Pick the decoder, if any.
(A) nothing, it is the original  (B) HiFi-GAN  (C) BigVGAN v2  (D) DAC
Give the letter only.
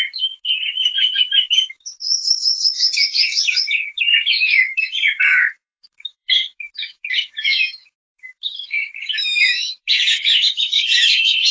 D